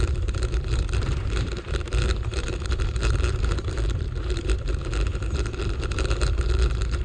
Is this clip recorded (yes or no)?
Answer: no